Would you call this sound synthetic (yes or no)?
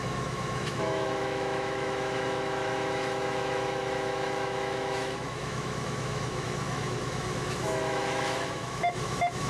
yes